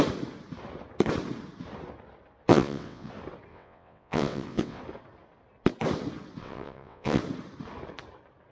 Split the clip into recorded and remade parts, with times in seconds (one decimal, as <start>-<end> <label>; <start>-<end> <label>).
0.0-2.5 recorded; 2.5-3.1 remade; 3.1-3.5 recorded; 3.5-4.8 remade; 4.8-6.4 recorded; 6.4-7.2 remade; 7.2-8.5 recorded